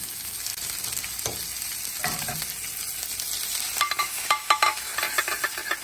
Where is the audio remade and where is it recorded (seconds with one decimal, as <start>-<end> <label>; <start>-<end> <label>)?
0.0-0.5 remade; 0.5-4.0 recorded; 4.0-4.9 remade; 4.9-5.8 recorded

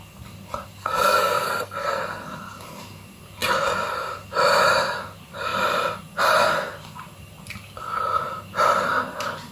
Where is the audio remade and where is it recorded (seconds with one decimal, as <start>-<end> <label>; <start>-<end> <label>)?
0.0-0.8 recorded; 0.8-2.2 remade; 2.2-9.5 recorded